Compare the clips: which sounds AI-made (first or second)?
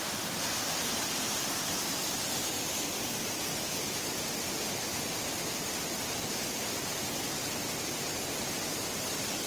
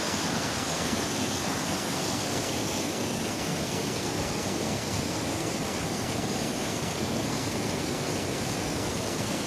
second